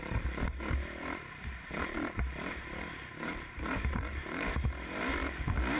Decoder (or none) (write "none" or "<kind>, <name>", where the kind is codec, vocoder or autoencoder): vocoder, BigVGAN v2